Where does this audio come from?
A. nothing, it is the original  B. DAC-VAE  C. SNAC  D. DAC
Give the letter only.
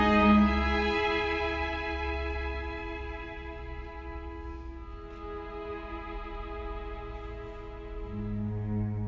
A